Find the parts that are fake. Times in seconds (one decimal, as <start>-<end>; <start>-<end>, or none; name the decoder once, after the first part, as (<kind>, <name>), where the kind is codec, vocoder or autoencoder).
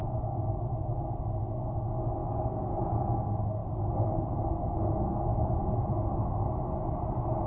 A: 0.0-1.1 (vocoder, BigVGAN v2); 2.2-3.0; 3.6-4.5; 5.3-5.9